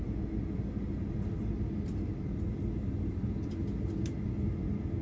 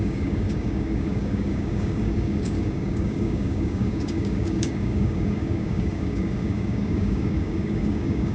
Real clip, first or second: first